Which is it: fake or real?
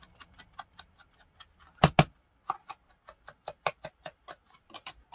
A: real